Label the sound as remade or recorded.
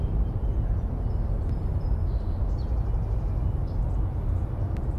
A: recorded